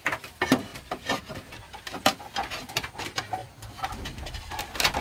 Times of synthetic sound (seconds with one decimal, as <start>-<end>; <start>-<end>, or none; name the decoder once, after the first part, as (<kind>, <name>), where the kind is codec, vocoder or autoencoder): 0.7-1.8 (vocoder, BigVGAN v2)